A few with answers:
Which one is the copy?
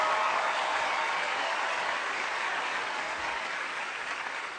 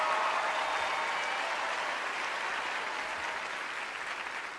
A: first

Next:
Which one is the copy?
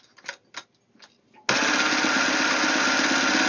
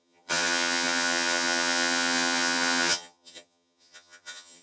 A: second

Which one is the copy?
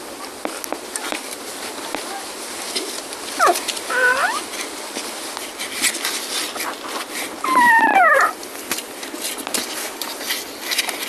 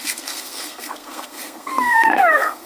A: second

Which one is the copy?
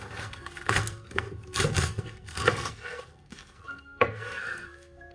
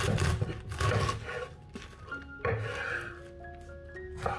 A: first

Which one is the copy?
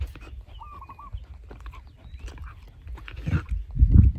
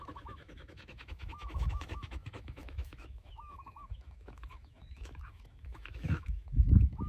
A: second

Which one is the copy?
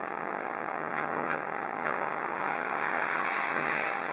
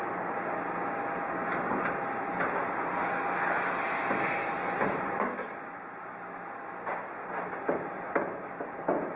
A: first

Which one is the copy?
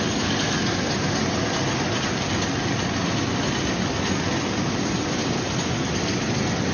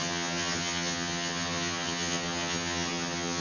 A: second